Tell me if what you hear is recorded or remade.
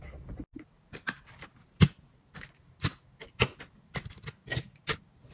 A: recorded